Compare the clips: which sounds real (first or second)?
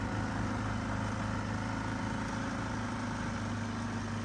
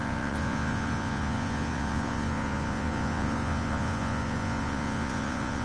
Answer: first